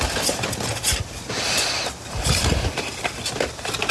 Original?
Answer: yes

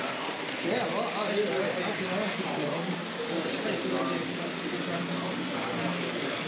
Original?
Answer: yes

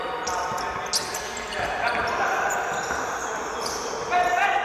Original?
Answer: yes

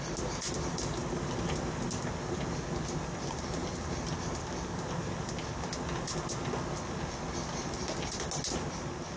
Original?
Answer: yes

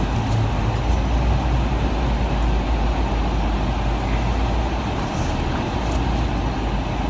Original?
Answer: yes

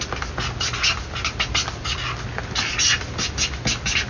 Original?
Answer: yes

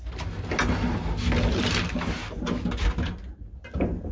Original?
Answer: yes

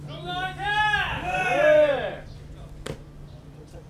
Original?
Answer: yes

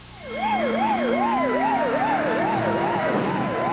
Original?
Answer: no